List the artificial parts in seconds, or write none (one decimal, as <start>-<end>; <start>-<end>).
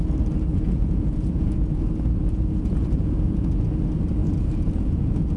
0.5-3.7; 4.2-5.4